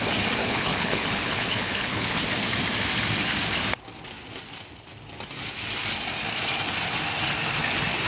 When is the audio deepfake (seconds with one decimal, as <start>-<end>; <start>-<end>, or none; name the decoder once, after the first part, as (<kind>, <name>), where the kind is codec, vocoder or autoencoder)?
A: 0.4-2.2 (codec, HILCodec)